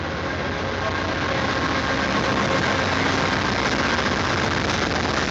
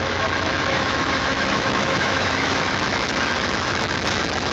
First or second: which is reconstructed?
second